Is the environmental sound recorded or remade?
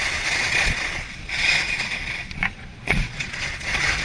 remade